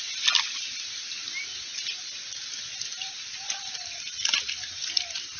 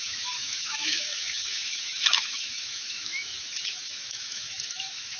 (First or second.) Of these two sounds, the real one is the first